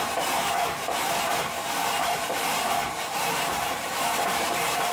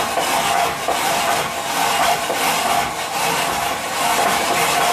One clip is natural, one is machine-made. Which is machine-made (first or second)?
first